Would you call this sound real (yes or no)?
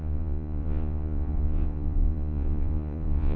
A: no